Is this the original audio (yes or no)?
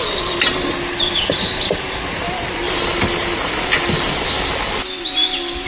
yes